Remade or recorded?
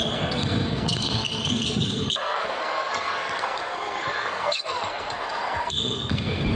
remade